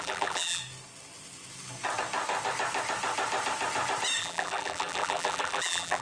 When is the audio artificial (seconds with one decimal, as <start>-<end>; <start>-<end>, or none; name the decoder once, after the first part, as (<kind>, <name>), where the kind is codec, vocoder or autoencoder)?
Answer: 0.0-0.6 (vocoder, BigVGAN v2); 4.2-6.0